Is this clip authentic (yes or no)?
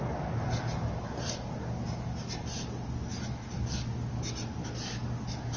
yes